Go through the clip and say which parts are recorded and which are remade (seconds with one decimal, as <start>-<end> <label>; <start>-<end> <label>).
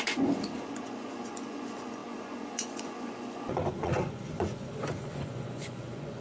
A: 0.0-6.2 remade